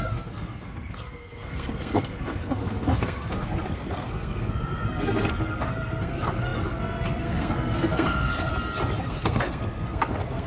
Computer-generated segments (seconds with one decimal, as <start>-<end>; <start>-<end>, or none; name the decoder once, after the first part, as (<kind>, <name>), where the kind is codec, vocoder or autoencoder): 0.0-8.5 (codec, SNAC); 9.0-10.5